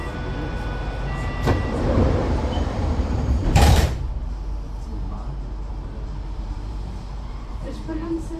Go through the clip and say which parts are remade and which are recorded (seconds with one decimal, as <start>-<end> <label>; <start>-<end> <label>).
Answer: 0.0-1.2 recorded; 1.2-8.4 remade